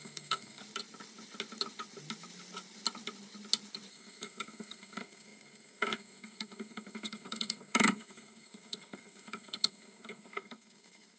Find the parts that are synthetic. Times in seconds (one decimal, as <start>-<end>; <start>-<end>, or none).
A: 0.0-0.6; 3.9-11.2

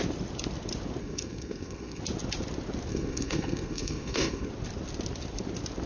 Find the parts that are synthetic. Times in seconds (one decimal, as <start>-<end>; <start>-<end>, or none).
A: 1.0-2.0; 2.9-4.5